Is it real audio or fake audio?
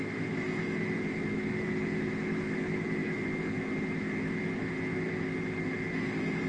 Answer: fake